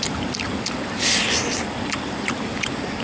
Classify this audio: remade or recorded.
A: recorded